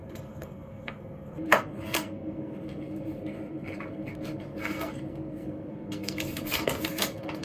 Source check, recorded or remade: remade